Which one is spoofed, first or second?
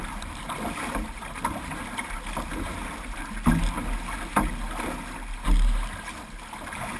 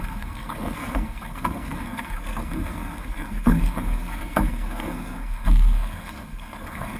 second